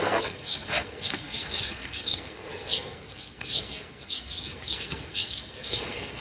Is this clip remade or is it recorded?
remade